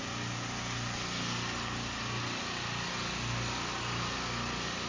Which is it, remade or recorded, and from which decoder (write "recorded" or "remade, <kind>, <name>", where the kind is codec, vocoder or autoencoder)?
recorded